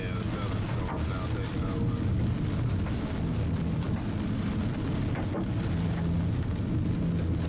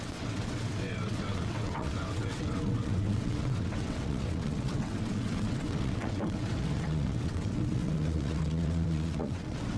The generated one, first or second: second